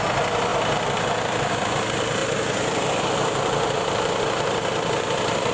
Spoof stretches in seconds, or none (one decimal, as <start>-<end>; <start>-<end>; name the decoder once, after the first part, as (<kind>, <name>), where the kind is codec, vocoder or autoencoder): 0.5-1.5 (vocoder, BigVGAN v2); 2.2-5.5